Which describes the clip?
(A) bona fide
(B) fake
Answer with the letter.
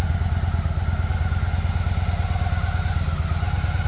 A